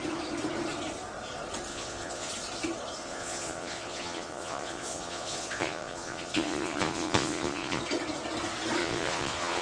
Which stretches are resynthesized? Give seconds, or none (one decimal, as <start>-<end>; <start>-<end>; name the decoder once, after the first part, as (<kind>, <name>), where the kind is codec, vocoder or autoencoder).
1.7-2.3 (vocoder, Vocos); 3.0-7.8; 8.8-9.6